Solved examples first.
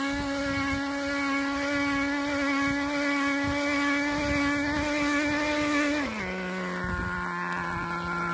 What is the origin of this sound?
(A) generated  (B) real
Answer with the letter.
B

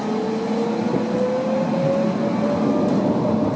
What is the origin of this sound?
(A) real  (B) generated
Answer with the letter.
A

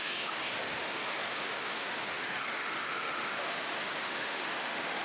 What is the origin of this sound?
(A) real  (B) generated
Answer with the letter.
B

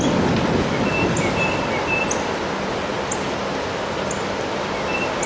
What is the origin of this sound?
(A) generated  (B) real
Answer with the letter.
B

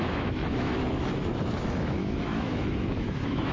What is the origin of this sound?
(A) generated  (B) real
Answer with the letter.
A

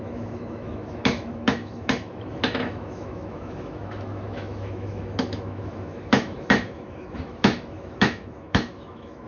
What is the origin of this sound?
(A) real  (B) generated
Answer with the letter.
B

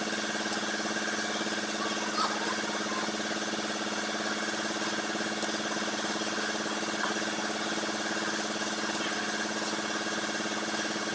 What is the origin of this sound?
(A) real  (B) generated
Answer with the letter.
A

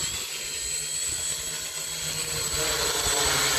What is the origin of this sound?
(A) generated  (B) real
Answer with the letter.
B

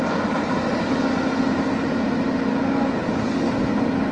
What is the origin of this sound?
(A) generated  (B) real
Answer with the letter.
B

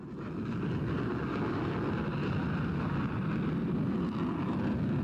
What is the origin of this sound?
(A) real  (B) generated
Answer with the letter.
A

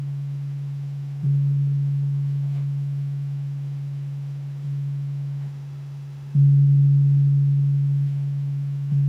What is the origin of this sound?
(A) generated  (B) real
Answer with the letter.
A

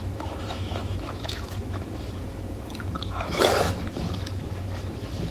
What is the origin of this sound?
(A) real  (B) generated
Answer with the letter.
B